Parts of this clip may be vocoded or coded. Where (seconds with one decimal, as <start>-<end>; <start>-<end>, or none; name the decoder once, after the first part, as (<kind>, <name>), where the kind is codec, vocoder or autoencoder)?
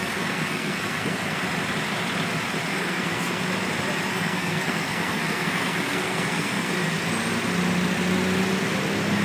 0.0-1.4 (codec, SNAC); 2.7-3.4; 4.1-6.7